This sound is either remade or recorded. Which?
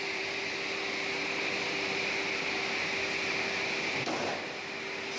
remade